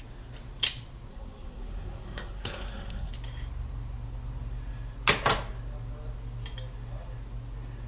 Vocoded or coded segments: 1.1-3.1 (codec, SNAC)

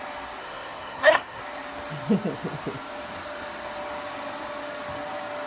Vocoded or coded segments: 0.4-1.4 (codec, SNAC)

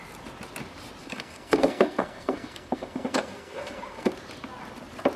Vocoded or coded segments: 1.0-4.1 (codec, SNAC)

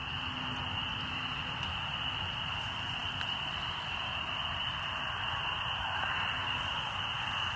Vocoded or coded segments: none